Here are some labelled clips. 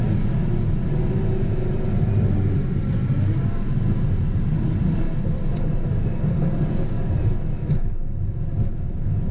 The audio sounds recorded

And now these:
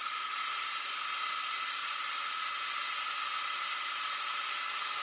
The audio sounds recorded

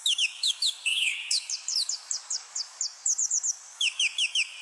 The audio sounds remade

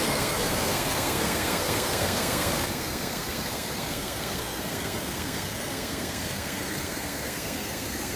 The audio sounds remade